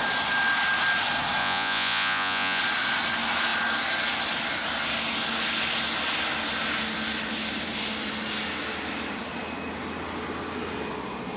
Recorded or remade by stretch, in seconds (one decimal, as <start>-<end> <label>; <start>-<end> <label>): 0.0-1.4 recorded; 1.4-2.6 remade; 2.6-11.4 recorded